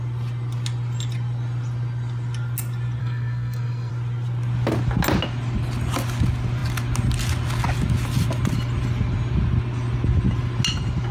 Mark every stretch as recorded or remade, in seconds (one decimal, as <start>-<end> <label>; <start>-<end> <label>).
0.0-3.0 recorded; 3.0-3.9 remade; 3.9-11.1 recorded

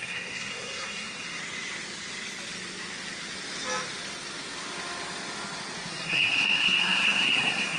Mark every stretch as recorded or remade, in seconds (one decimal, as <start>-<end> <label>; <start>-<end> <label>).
0.0-1.4 remade; 1.4-5.9 recorded; 5.9-7.8 remade